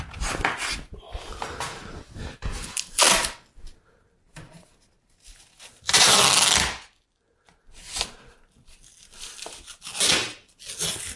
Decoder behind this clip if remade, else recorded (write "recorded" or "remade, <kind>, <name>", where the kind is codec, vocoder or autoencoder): recorded